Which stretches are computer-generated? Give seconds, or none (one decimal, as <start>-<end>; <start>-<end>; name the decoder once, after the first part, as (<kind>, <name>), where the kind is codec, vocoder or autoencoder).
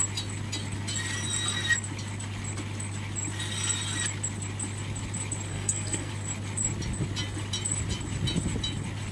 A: 5.5-6.1 (codec, SNAC)